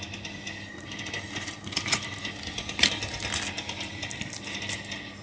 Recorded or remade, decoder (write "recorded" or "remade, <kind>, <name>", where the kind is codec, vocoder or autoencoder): recorded